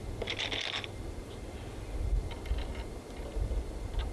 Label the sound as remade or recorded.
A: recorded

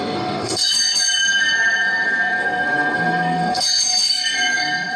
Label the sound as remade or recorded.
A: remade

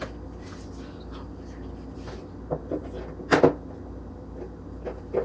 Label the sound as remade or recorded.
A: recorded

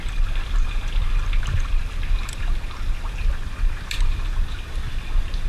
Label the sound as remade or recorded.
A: recorded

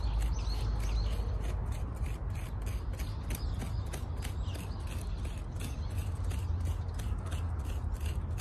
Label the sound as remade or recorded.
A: recorded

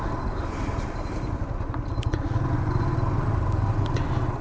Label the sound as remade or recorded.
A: recorded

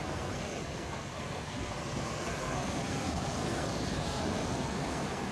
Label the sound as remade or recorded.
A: remade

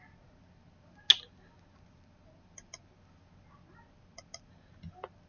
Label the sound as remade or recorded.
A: recorded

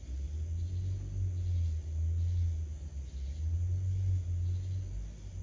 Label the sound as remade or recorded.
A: recorded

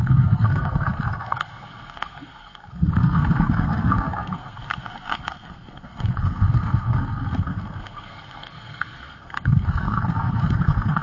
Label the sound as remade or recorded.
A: remade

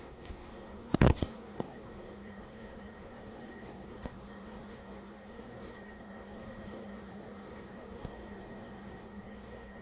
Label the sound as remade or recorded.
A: remade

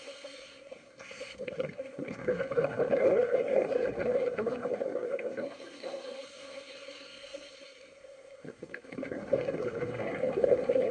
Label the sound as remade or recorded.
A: remade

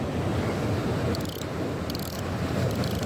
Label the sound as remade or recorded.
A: recorded